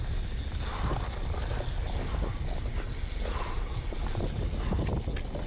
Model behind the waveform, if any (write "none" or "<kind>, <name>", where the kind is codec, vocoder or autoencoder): none